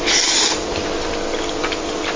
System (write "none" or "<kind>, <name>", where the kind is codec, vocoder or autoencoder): none